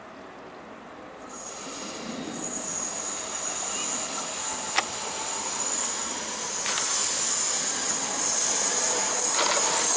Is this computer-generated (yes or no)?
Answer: no